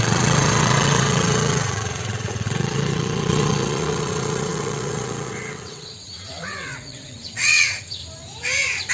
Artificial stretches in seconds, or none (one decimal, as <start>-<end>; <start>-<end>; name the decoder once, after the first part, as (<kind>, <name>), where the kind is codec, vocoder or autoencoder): 0.0-8.0 (vocoder, WaveNeXt)